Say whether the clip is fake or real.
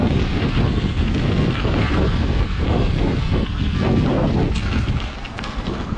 fake